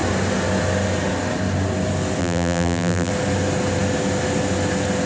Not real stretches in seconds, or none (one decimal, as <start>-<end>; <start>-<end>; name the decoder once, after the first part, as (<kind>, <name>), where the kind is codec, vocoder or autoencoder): 2.2-3.1 (vocoder, BigVGAN v2)